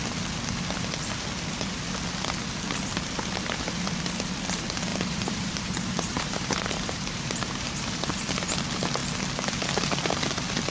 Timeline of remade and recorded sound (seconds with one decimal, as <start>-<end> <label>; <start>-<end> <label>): 0.0-4.9 recorded; 4.9-8.1 remade; 8.1-10.7 recorded